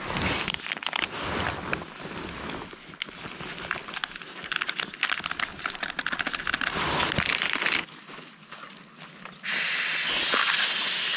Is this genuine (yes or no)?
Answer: yes